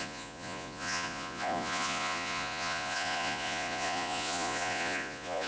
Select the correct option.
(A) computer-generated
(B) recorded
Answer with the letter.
A